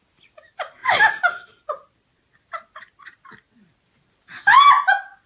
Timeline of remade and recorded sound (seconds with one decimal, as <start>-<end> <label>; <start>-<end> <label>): 0.0-5.3 recorded